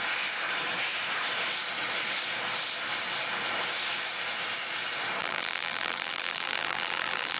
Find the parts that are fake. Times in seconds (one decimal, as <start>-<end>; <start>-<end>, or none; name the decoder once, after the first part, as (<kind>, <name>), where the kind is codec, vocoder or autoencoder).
5.2-7.4 (vocoder, BigVGAN v2)